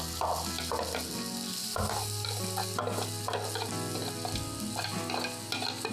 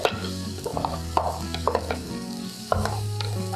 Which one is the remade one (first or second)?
second